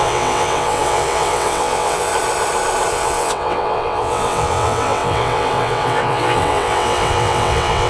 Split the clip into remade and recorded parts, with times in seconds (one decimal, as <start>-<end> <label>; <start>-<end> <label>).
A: 0.0-2.1 remade; 2.1-2.9 recorded; 2.9-7.9 remade